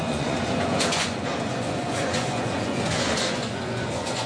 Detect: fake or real fake